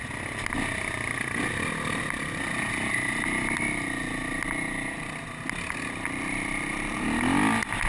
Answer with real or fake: real